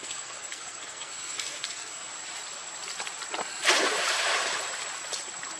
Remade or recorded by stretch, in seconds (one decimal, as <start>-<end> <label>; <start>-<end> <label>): 0.0-2.1 remade; 2.1-5.6 recorded